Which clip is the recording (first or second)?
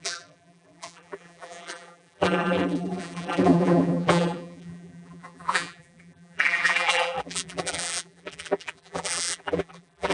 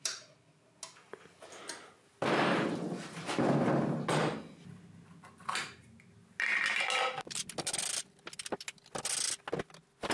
second